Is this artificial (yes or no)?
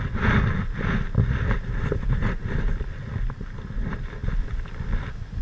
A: no